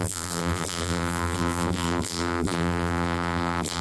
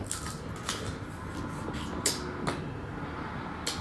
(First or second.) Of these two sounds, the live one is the second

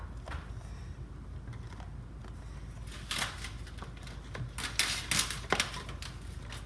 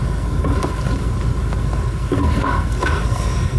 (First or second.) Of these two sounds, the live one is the first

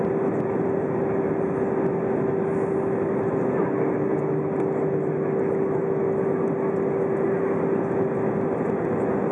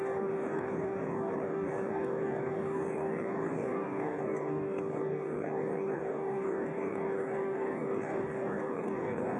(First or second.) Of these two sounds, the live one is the first